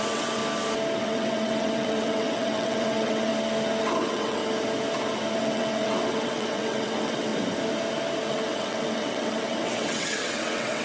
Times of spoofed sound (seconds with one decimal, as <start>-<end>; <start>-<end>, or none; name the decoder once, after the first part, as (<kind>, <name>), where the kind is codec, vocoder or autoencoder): 0.0-0.4 (vocoder, WaveNeXt); 1.0-3.3; 3.8-4.4; 5.4-7.3; 8.3-10.8